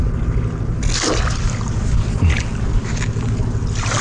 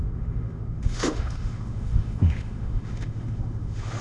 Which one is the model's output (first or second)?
second